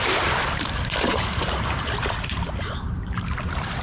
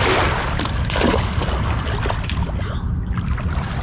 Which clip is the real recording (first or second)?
second